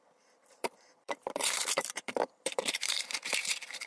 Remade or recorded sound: remade